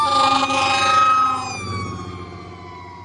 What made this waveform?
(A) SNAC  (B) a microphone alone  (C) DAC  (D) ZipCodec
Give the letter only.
B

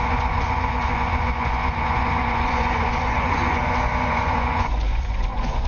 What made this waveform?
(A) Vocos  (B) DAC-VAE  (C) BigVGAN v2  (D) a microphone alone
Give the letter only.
A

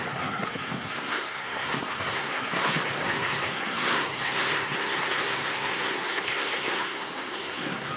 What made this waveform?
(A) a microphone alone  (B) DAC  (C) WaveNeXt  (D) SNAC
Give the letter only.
D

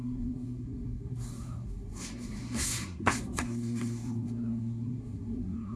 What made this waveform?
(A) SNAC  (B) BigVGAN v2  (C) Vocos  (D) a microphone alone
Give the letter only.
A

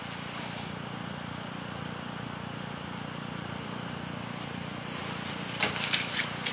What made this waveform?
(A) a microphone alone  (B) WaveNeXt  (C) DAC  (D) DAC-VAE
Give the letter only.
A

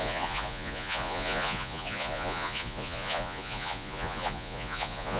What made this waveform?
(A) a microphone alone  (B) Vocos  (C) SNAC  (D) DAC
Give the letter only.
B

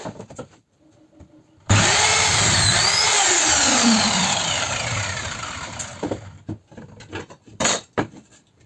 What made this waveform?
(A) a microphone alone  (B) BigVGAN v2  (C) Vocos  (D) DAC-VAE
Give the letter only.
B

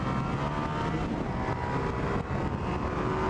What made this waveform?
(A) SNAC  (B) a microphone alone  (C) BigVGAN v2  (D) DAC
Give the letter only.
B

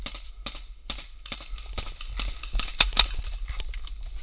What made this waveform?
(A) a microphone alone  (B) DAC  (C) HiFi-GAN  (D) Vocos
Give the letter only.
A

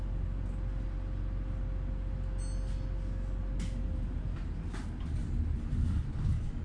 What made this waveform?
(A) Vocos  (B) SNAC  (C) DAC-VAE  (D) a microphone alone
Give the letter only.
D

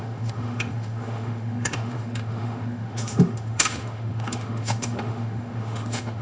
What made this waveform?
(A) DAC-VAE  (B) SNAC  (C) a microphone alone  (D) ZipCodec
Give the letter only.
A